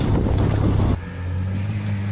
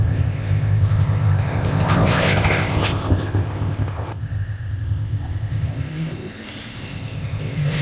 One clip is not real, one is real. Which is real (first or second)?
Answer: first